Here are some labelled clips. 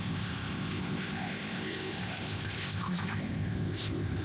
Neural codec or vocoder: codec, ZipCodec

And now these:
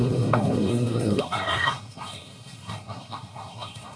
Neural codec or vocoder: codec, SNAC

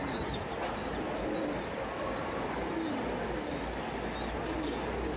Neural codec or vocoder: none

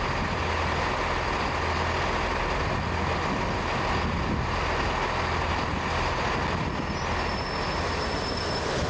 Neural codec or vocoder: none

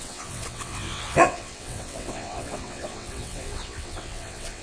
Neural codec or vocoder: vocoder, WaveNeXt